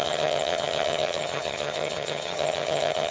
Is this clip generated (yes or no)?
yes